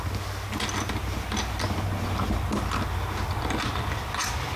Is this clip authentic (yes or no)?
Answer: yes